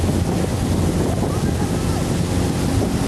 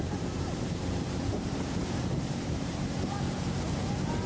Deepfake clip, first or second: second